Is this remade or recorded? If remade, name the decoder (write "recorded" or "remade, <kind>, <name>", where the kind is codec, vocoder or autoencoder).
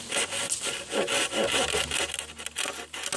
recorded